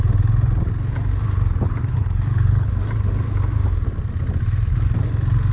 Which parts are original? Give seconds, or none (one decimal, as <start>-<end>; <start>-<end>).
0.0-1.9; 2.7-5.5